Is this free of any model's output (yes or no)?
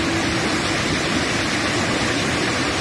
yes